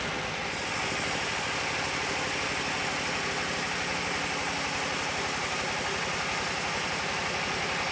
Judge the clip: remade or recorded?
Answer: recorded